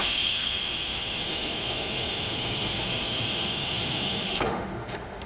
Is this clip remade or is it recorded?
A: remade